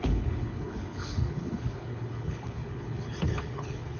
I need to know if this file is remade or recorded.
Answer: remade